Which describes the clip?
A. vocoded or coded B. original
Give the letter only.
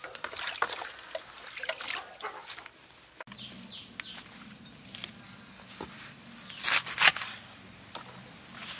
B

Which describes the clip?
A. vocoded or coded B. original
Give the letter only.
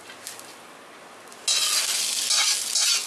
B